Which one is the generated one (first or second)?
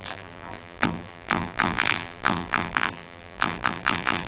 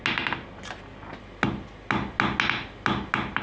first